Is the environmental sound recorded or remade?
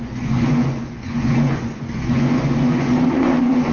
remade